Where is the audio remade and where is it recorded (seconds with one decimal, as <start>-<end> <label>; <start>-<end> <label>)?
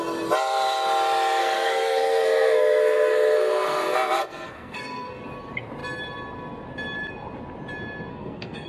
0.0-1.4 recorded; 1.4-5.2 remade; 5.2-8.1 recorded; 8.1-8.7 remade